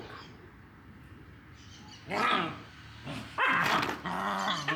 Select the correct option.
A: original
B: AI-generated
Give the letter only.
A